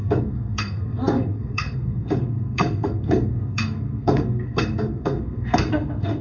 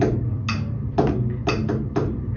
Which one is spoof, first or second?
first